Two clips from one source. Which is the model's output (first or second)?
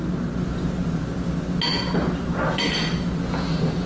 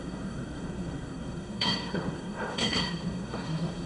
second